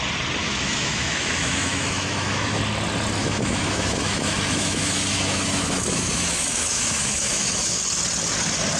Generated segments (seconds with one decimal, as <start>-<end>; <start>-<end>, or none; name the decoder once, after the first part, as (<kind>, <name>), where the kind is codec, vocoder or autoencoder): 0.4-2.6 (autoencoder, DAC-VAE); 3.2-7.8